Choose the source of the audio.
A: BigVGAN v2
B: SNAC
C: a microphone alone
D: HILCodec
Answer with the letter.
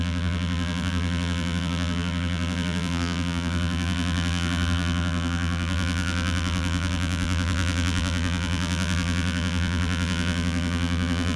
A